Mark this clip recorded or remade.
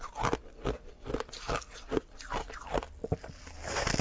recorded